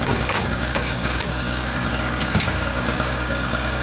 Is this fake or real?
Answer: fake